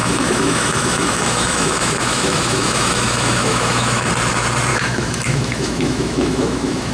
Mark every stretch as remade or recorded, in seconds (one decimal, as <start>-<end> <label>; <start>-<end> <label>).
0.0-4.1 remade; 4.1-4.7 recorded; 4.7-6.9 remade